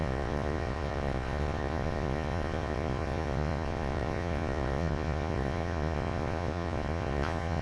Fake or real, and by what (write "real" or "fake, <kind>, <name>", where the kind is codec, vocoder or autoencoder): fake, vocoder, Vocos